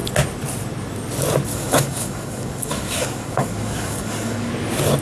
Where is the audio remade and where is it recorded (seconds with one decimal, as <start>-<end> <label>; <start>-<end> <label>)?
0.0-1.5 recorded; 1.5-4.5 remade; 4.5-5.0 recorded